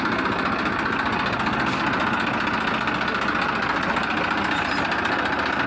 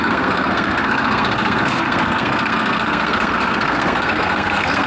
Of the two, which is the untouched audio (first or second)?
first